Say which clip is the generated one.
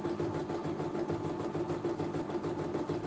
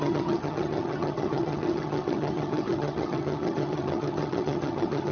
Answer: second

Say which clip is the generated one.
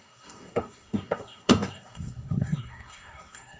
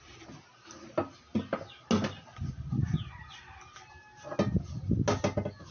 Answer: first